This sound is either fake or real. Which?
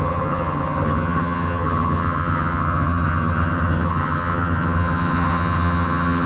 fake